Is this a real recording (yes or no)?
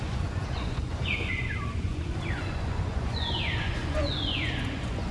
no